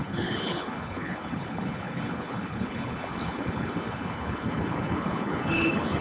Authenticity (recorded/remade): remade